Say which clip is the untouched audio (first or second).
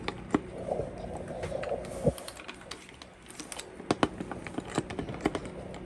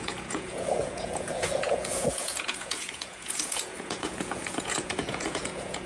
first